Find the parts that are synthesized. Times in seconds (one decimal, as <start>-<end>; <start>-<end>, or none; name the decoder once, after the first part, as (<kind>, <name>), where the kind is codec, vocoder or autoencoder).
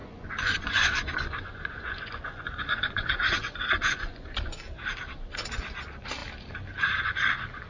0.0-4.6 (vocoder, Vocos)